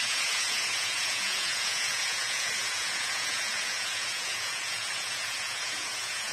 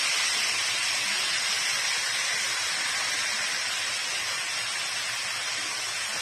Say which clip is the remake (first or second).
first